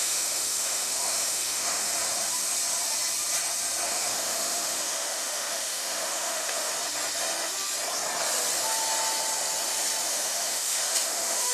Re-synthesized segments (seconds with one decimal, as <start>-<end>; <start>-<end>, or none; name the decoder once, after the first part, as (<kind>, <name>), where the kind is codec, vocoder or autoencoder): 0.0-1.9 (autoencoder, DAC-VAE); 3.9-6.7; 10.1-11.5